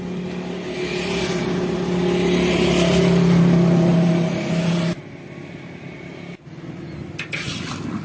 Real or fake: real